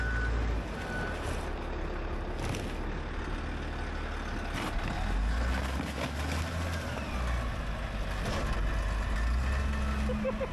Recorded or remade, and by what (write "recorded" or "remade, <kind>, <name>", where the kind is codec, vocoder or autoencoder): recorded